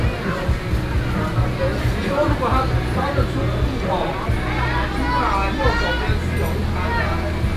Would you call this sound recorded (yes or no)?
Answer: yes